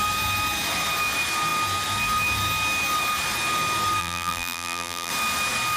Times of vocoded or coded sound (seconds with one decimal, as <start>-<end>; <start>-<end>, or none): 4.0-5.1